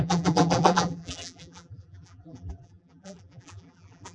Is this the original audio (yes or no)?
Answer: no